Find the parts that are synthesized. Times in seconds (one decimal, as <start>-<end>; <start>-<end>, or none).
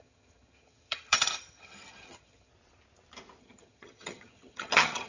0.0-2.5; 3.4-5.1